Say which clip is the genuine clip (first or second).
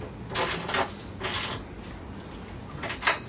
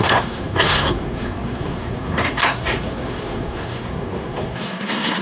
first